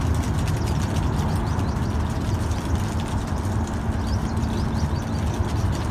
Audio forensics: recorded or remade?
recorded